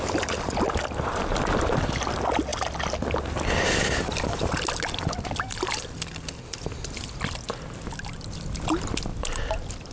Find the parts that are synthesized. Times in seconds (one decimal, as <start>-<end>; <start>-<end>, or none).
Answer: none